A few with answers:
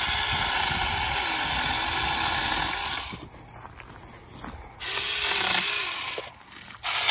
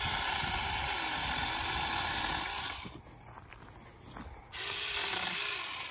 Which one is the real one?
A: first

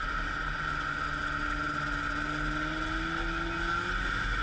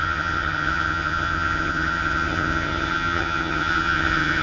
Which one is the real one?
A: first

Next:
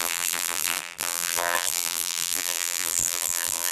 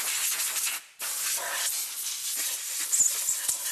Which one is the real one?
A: second